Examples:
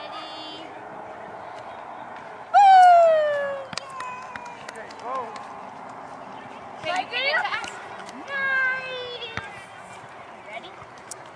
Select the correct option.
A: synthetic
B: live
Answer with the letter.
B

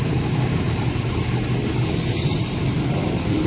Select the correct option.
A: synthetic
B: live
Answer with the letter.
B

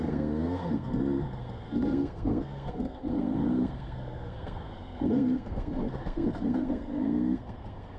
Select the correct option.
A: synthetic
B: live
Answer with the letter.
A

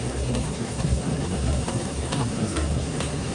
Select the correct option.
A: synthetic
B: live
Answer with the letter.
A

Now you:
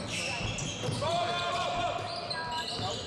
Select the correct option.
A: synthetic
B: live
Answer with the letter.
B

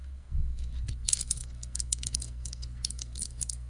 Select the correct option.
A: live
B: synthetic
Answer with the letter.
B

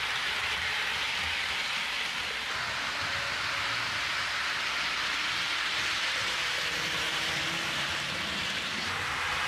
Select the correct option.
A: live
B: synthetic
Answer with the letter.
A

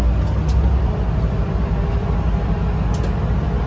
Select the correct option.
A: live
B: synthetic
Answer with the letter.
A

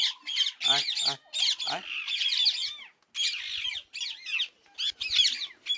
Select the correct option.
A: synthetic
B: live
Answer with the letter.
B